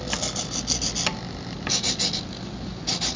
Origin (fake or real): real